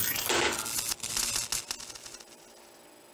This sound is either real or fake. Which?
real